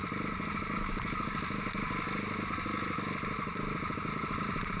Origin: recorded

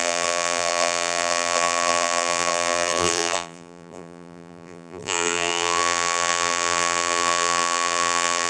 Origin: remade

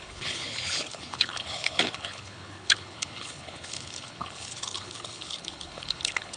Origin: remade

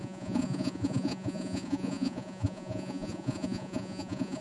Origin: remade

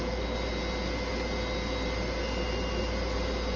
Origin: recorded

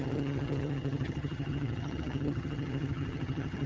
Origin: remade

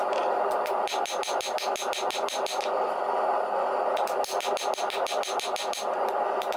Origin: recorded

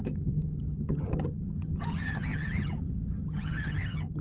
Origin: remade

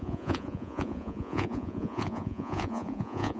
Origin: remade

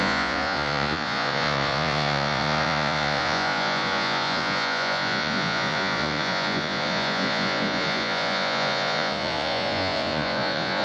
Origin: remade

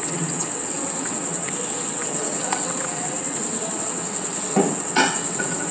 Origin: remade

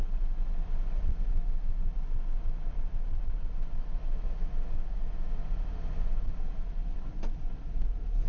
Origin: recorded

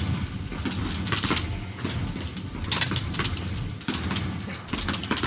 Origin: recorded